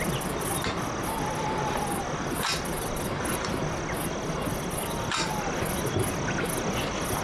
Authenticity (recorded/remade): recorded